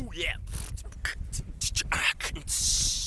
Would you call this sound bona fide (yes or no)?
yes